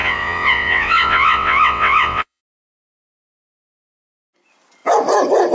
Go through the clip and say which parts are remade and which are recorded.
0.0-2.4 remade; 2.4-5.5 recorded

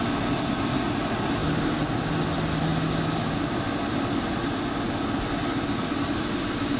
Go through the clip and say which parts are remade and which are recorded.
0.0-6.8 recorded

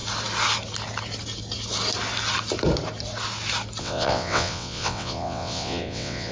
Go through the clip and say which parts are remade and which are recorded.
0.0-3.8 recorded; 3.8-6.3 remade

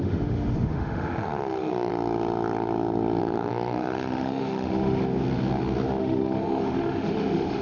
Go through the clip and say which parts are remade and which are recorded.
0.0-1.9 remade; 1.9-3.2 recorded; 3.2-5.0 remade; 5.0-6.0 recorded; 6.0-7.6 remade